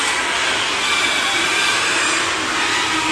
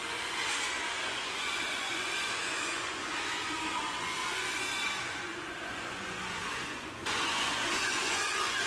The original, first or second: first